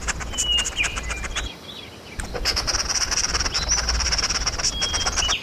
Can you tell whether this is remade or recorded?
remade